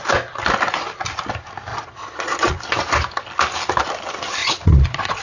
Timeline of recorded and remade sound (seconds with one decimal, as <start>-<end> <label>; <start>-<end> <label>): 0.0-1.7 recorded; 1.7-2.6 remade; 2.6-4.4 recorded; 4.4-5.2 remade